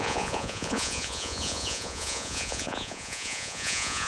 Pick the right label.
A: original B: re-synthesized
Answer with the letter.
B